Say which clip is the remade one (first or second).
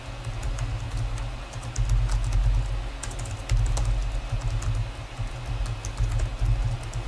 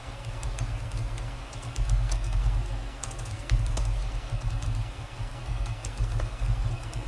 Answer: second